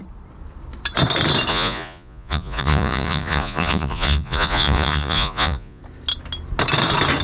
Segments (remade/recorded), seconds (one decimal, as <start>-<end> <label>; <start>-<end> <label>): 0.0-1.5 recorded; 1.5-5.8 remade; 5.8-7.2 recorded